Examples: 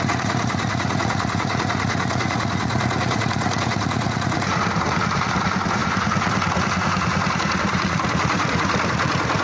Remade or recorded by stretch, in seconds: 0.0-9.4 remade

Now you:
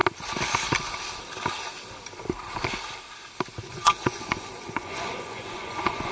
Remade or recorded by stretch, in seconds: 0.0-3.7 recorded; 3.7-6.1 remade